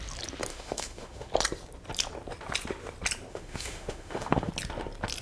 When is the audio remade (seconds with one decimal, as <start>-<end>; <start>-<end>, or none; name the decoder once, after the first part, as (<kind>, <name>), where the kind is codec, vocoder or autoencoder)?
0.5-1.3 (autoencoder, DAC-VAE); 3.3-4.5